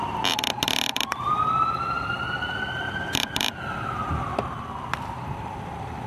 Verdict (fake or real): fake